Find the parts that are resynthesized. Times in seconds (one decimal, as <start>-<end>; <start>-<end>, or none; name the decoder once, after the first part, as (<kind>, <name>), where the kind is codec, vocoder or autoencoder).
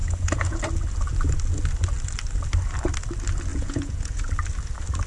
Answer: 0.0-0.6 (vocoder, Vocos); 3.5-4.3